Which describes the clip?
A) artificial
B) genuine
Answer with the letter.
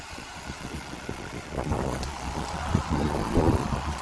A